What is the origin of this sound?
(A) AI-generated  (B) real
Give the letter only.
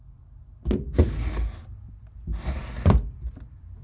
B